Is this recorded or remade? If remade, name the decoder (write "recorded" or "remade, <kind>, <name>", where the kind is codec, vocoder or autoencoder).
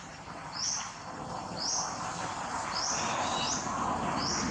recorded